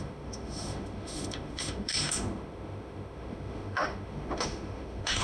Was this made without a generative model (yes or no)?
no